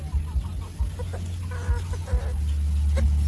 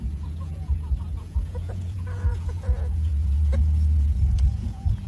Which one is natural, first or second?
first